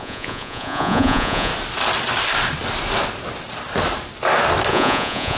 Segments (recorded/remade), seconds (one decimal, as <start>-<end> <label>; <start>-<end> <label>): 0.0-1.5 remade; 1.5-4.7 recorded; 4.7-5.4 remade